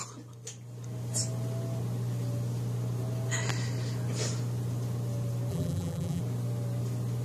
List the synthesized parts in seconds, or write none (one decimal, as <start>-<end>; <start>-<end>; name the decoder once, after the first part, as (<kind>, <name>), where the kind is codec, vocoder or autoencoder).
5.5-6.2 (vocoder, BigVGAN v2)

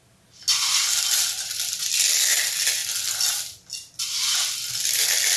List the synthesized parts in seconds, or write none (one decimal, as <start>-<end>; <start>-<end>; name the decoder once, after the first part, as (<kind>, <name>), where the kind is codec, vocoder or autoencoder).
none

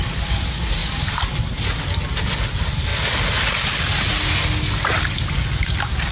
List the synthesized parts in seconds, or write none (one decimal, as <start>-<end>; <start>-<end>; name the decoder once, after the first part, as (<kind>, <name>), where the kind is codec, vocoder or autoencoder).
0.8-1.8 (vocoder, BigVGAN v2)

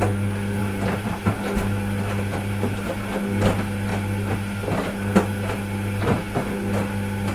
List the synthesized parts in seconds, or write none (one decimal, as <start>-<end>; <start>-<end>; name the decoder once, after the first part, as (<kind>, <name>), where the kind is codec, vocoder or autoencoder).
0.6-1.2 (vocoder, BigVGAN v2)

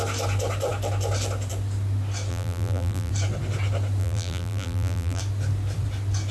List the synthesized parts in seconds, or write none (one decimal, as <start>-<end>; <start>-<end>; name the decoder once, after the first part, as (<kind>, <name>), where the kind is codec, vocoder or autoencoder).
2.3-3.1 (vocoder, BigVGAN v2); 4.0-5.2

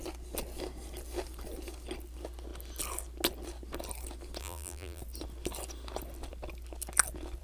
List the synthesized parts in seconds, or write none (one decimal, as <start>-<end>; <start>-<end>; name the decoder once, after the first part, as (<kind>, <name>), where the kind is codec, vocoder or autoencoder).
4.4-5.0 (vocoder, BigVGAN v2)

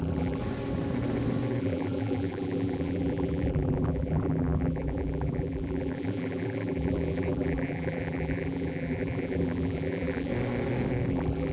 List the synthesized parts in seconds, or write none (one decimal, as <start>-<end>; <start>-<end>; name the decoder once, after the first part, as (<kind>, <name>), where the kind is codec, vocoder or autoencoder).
0.0-0.4 (vocoder, BigVGAN v2); 1.6-10.3; 11.1-11.5